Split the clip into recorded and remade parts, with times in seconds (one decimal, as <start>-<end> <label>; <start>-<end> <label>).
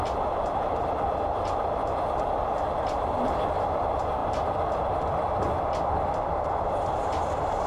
0.0-4.2 remade; 4.2-6.9 recorded; 6.9-7.7 remade